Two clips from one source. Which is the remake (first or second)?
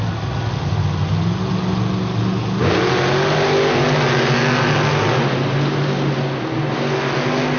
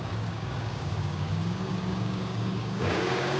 second